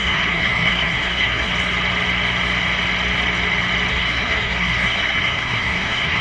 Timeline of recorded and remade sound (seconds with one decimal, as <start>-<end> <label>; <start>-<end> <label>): 0.0-1.5 remade; 1.5-3.9 recorded; 3.9-6.2 remade